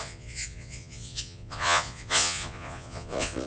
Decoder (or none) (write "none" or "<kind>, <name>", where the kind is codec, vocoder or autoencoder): vocoder, Vocos